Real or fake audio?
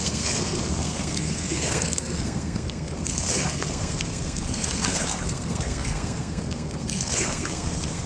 fake